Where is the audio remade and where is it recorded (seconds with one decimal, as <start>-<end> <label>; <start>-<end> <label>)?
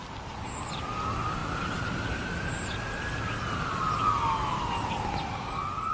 0.0-5.9 recorded